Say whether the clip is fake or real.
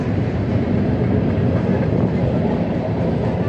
real